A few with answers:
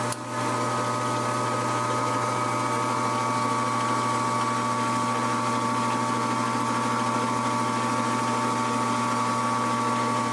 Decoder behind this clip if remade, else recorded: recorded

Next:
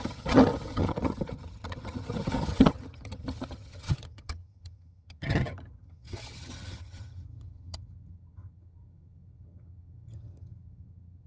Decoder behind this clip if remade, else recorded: remade, vocoder, HiFi-GAN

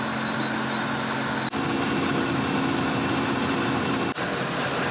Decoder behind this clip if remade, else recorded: recorded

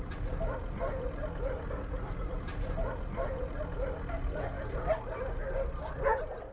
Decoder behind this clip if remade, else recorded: recorded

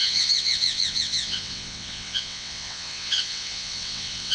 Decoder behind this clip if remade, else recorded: remade, vocoder, WaveNeXt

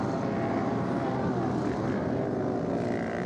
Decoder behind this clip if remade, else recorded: recorded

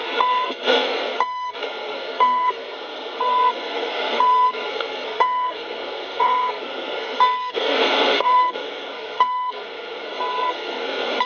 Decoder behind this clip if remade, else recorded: remade, codec, SNAC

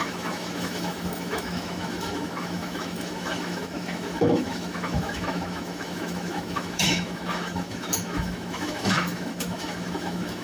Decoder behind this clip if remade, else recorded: remade, autoencoder, DAC-VAE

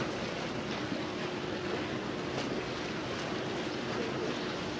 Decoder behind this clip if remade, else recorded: recorded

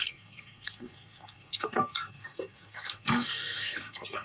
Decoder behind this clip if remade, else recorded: remade, codec, SNAC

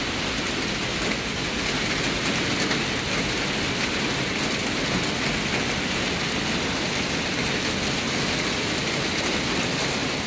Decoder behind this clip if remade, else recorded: recorded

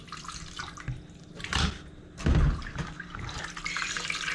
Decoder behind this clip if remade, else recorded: recorded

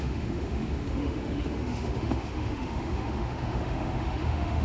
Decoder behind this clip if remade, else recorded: remade, autoencoder, DAC-VAE